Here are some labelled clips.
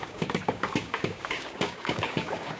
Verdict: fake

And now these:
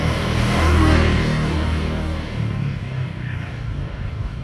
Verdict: fake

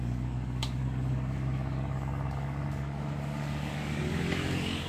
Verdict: fake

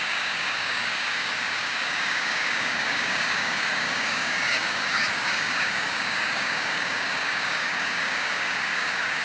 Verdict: fake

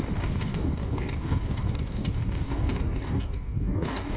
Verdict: fake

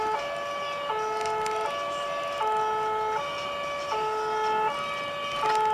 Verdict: real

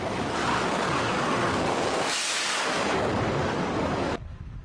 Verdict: fake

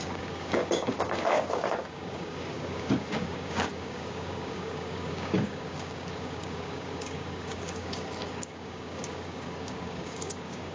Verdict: fake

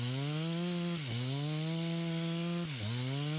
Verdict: real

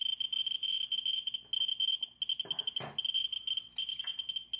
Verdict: real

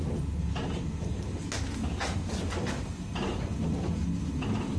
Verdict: real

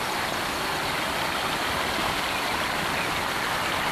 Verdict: real